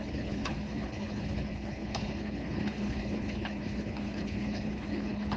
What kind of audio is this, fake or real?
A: fake